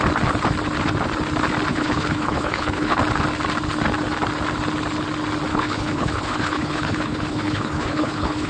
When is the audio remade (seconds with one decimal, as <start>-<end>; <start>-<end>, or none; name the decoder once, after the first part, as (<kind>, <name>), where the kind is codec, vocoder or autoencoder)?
1.7-3.0 (codec, HILCodec); 5.5-8.5